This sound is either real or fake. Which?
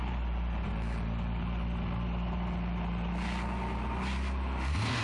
real